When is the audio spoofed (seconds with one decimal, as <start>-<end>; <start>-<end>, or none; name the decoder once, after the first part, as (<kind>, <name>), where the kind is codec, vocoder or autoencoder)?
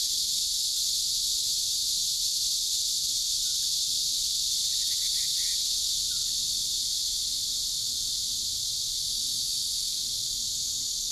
none